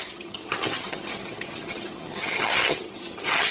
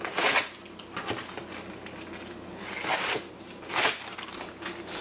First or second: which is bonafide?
second